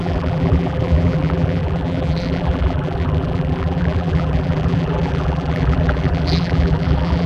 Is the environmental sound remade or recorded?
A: remade